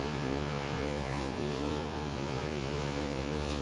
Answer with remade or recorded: remade